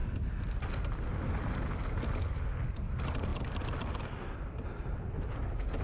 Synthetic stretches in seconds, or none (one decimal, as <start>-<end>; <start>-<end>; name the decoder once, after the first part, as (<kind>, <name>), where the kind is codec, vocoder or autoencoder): none

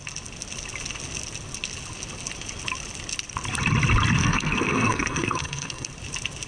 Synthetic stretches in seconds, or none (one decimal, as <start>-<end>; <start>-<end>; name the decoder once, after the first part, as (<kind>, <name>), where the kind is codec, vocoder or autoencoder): 4.2-5.9 (codec, SNAC)

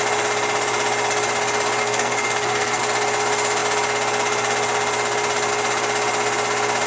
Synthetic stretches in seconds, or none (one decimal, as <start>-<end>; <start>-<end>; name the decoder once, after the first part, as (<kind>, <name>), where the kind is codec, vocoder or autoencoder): 1.8-2.8 (codec, SNAC)

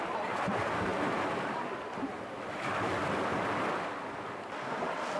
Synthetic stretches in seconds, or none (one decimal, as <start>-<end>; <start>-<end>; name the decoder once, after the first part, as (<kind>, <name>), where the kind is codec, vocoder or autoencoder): none